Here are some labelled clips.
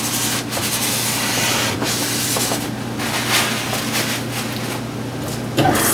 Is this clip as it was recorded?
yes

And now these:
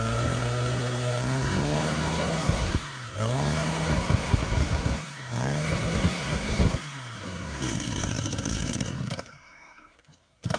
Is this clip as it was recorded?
no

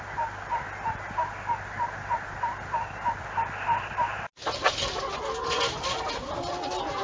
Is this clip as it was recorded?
yes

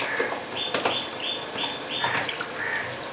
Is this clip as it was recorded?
yes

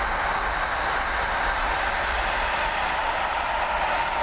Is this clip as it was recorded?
yes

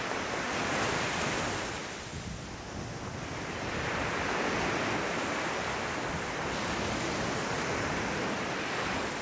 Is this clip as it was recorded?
yes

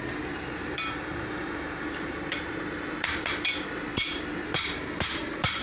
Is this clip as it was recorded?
no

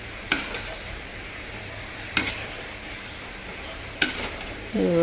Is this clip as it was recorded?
no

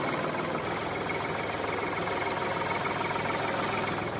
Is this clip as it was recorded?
yes